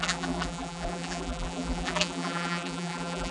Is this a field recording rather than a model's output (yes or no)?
no